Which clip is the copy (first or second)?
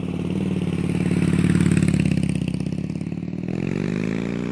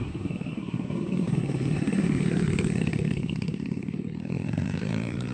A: second